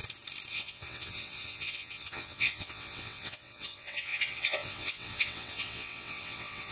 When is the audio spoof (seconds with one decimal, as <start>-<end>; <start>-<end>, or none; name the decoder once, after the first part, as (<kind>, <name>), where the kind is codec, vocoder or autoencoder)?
0.5-6.7 (vocoder, WaveNeXt)